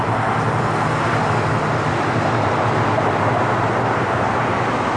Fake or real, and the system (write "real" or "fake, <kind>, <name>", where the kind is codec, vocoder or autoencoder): real